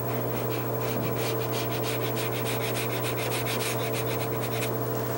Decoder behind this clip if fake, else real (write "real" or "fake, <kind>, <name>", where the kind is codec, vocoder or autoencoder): real